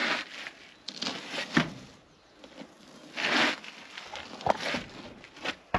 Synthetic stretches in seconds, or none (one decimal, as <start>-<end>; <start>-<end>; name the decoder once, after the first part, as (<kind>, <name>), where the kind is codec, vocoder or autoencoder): none